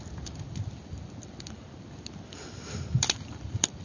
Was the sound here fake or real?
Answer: fake